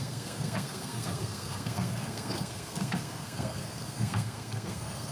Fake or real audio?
fake